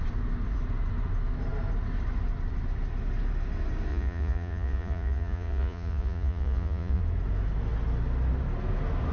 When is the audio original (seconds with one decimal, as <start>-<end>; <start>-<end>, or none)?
0.0-3.9; 7.0-9.1